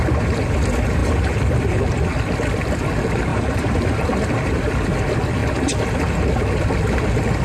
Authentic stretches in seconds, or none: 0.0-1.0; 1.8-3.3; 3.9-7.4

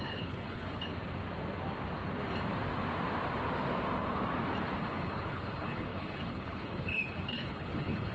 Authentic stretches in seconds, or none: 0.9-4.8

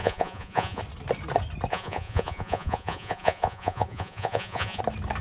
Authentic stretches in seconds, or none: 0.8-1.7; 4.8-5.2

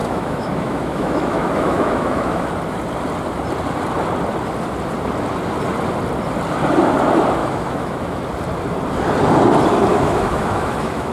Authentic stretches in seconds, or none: 2.5-7.4; 8.2-9.9

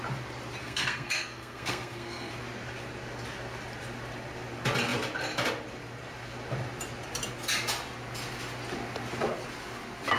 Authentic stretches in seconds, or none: 0.0-0.6; 2.3-10.2